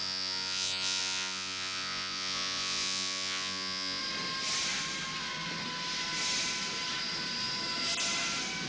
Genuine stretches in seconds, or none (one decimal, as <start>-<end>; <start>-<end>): 4.0-8.7